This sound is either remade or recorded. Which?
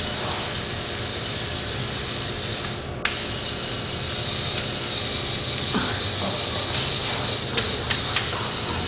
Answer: recorded